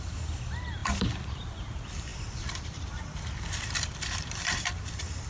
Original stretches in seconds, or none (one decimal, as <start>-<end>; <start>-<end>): 0.0-0.8; 1.7-2.1

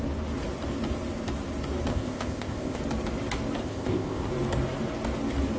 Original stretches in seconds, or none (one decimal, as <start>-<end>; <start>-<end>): 0.0-1.9; 2.8-3.6; 4.3-5.6